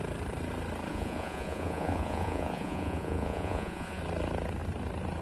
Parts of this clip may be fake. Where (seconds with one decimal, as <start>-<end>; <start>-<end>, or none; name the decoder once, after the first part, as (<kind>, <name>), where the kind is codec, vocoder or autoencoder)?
0.9-4.0 (vocoder, Vocos)